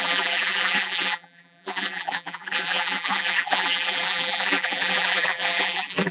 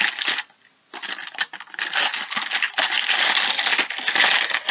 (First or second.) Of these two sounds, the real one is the second